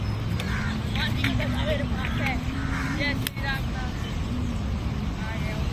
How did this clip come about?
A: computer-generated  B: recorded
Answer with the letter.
B